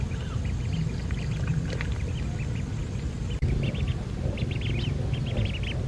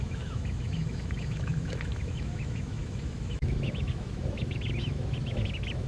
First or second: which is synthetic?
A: second